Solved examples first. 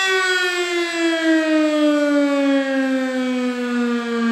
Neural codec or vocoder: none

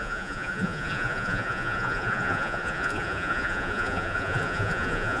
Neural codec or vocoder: vocoder, Vocos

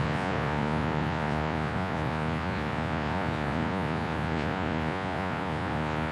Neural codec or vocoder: vocoder, Vocos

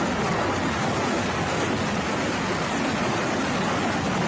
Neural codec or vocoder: none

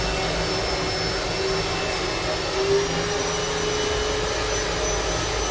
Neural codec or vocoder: none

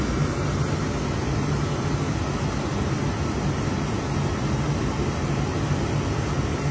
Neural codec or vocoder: none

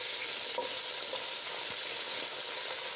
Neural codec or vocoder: none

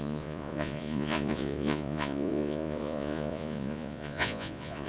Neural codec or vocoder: vocoder, Vocos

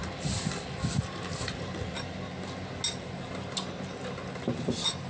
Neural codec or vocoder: none